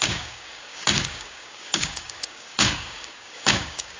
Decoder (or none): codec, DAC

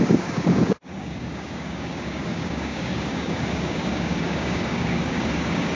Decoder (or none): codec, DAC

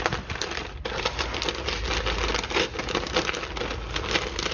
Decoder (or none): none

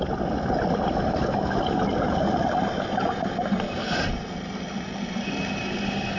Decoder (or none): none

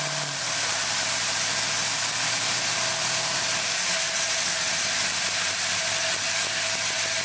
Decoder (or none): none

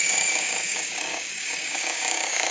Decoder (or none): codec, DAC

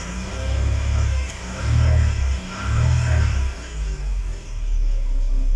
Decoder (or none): codec, DAC